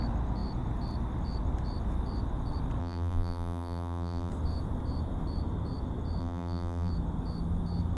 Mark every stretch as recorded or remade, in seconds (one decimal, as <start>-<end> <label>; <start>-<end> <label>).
0.0-2.8 recorded; 2.8-4.3 remade; 4.3-6.2 recorded; 6.2-6.9 remade; 6.9-8.0 recorded

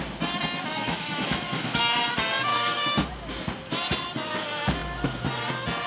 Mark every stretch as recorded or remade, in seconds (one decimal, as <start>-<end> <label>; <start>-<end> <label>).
0.0-0.7 recorded; 0.7-1.8 remade; 1.8-2.5 recorded; 2.5-3.1 remade; 3.1-5.9 recorded

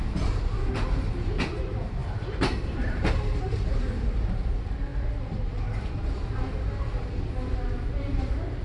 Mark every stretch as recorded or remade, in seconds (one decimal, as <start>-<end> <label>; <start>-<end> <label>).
0.0-8.6 recorded